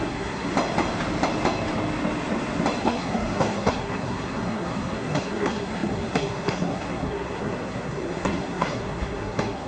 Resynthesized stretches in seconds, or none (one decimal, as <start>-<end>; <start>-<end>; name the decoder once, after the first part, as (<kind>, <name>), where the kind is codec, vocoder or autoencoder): 0.0-0.5 (codec, SNAC); 2.8-9.7